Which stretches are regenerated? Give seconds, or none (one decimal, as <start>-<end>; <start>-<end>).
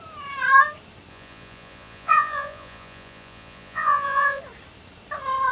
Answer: 1.1-4.4